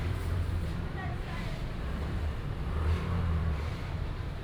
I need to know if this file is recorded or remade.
remade